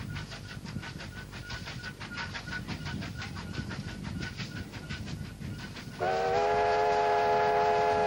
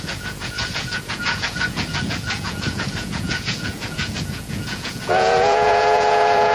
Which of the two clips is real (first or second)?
first